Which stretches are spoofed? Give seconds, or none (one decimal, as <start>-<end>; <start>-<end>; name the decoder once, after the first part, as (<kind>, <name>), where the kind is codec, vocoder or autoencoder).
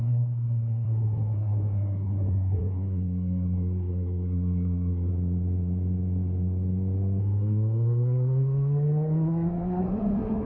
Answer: 0.0-5.1 (codec, SNAC); 7.2-10.5